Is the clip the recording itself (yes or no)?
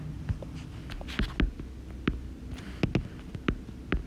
yes